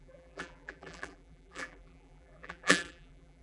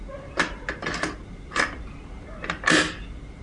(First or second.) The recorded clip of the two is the second